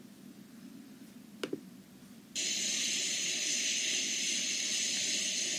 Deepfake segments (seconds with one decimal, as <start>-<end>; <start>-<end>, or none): 2.1-3.3